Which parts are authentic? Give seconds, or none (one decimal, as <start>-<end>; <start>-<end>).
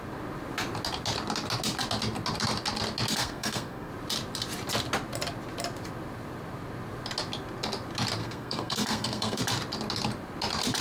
0.0-3.2; 3.9-8.2; 9.4-10.8